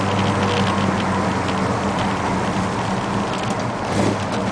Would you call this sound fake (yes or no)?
no